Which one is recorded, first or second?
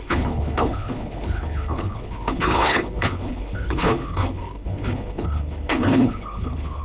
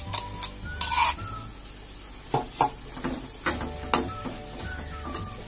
second